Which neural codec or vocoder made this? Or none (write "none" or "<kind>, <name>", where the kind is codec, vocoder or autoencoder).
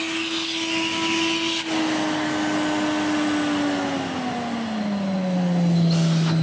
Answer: none